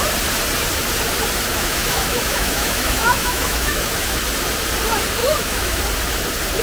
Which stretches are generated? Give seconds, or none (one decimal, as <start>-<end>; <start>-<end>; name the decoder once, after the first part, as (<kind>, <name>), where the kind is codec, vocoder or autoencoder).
1.5-4.2 (autoencoder, DAC-VAE); 5.2-5.8